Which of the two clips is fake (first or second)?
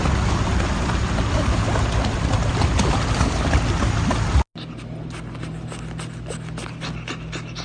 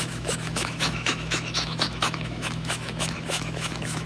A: second